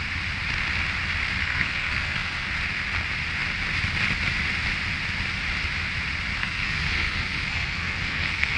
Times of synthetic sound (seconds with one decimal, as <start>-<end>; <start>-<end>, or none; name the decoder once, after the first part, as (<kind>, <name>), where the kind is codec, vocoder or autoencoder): 1.4-2.5 (codec, SNAC); 6.4-8.6